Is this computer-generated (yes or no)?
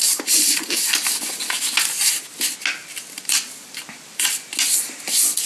no